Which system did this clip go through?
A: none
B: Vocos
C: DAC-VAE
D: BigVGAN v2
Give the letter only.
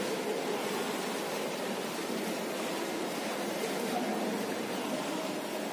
A